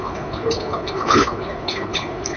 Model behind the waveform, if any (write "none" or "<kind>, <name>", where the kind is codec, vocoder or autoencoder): codec, HILCodec